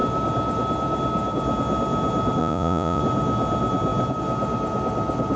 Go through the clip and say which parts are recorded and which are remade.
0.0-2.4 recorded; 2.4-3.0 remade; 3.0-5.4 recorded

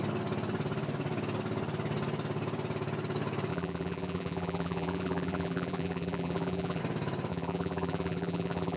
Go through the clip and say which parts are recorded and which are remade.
0.0-3.5 recorded; 3.5-6.8 remade; 6.8-7.3 recorded; 7.3-8.8 remade

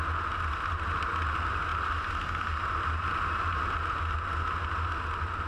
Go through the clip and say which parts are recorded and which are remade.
0.0-5.5 recorded

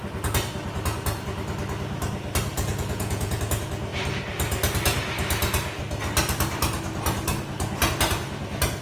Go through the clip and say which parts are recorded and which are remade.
0.0-2.5 recorded; 2.5-3.4 remade; 3.4-8.8 recorded

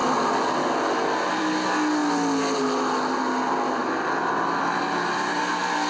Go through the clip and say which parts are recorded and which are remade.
0.0-5.9 recorded